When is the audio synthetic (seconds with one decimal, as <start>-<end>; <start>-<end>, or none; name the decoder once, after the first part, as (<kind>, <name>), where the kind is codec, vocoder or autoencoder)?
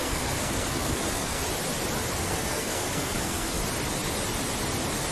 0.0-1.4 (codec, SNAC); 2.2-3.6